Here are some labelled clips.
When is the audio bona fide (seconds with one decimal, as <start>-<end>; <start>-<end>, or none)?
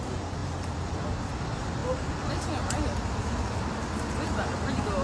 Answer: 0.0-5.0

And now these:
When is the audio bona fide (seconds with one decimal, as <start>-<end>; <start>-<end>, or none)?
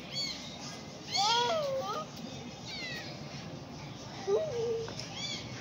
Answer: 0.0-5.6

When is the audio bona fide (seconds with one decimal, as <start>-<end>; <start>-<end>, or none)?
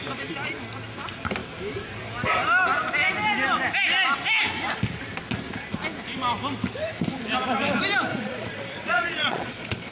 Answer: 0.0-8.1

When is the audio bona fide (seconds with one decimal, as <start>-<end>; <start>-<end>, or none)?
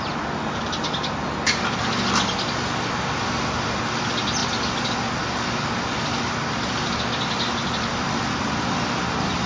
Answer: 0.0-4.4; 4.9-9.5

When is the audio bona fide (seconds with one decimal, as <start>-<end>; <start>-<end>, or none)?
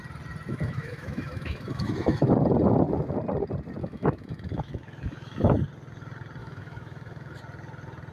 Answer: 0.0-0.5; 2.3-3.8; 5.6-6.4; 7.4-8.1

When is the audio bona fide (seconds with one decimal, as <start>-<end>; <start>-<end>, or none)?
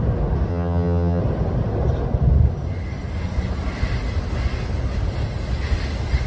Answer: 0.0-0.5; 1.2-6.3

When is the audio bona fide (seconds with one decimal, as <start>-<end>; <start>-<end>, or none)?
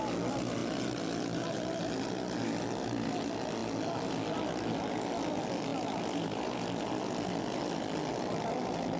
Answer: 0.0-9.0